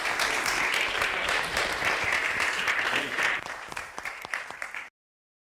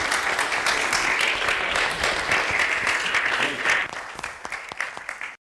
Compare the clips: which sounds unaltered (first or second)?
second